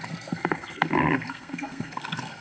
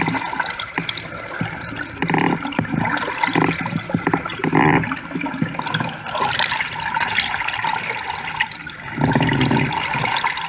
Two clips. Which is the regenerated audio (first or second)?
first